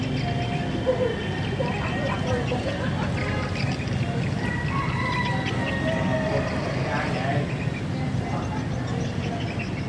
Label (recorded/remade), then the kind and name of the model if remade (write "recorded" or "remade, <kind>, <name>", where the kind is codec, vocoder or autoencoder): recorded